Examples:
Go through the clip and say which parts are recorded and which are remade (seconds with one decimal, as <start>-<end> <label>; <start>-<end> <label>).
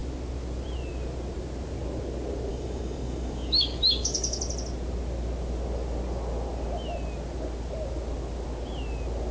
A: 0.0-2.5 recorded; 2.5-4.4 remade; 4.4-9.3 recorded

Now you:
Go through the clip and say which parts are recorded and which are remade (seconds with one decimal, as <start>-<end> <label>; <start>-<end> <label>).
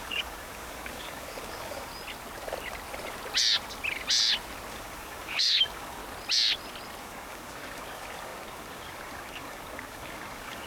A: 0.0-1.9 remade; 1.9-4.7 recorded; 4.7-6.0 remade; 6.0-7.0 recorded; 7.0-10.7 remade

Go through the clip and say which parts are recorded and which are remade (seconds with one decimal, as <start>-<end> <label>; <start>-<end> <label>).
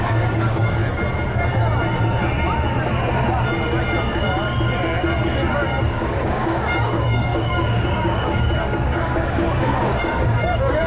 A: 0.0-0.8 remade; 0.8-5.8 recorded; 5.8-10.9 remade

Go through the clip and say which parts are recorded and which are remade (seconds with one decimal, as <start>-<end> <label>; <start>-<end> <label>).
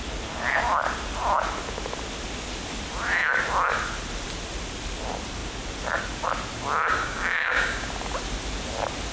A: 0.0-7.0 recorded; 7.0-7.9 remade; 7.9-9.1 recorded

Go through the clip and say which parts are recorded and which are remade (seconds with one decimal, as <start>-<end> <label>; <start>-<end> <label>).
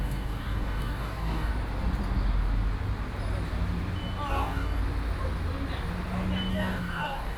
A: 0.0-1.5 remade; 1.5-4.3 recorded; 4.3-4.8 remade; 4.8-6.5 recorded; 6.5-7.4 remade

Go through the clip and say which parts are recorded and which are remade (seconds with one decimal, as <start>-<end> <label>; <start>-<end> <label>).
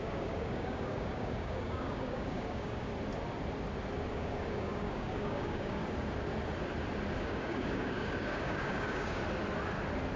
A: 0.0-2.9 remade; 2.9-4.1 recorded; 4.1-5.8 remade; 5.8-7.2 recorded; 7.2-9.2 remade; 9.2-10.2 recorded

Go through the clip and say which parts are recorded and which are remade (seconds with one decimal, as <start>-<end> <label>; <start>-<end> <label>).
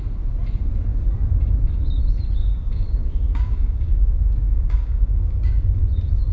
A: 0.0-2.4 recorded; 2.4-5.8 remade; 5.8-6.3 recorded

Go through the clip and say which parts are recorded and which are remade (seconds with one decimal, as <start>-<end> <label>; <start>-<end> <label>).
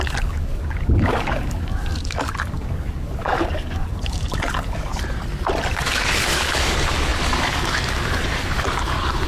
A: 0.0-4.9 remade; 4.9-5.7 recorded; 5.7-9.3 remade